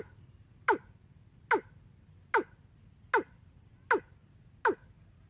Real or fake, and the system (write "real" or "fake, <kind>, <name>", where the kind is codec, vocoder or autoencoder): real